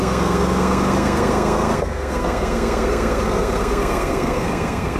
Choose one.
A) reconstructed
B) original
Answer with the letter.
A